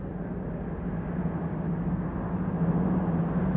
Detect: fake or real real